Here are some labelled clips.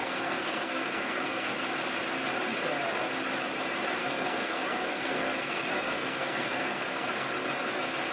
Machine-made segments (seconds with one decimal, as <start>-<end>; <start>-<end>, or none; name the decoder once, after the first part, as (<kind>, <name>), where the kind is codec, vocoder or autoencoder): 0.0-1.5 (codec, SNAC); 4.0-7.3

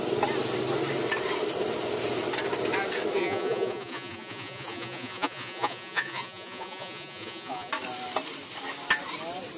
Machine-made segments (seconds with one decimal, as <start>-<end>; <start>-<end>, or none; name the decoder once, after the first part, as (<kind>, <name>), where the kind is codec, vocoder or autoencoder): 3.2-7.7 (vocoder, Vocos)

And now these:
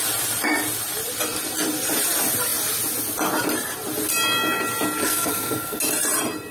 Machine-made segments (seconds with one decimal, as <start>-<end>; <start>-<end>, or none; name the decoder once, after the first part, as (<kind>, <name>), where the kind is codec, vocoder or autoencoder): 5.0-5.8 (codec, SNAC)